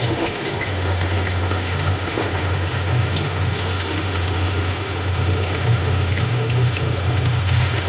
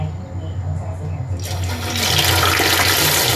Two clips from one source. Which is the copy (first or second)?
first